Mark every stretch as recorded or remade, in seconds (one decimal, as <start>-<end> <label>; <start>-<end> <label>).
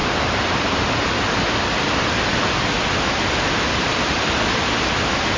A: 0.0-5.4 recorded